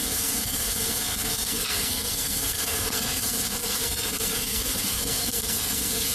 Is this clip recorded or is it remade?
remade